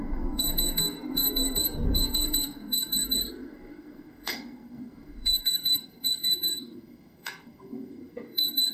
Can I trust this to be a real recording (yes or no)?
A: no